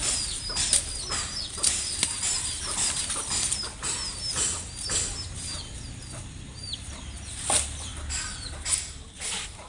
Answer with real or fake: real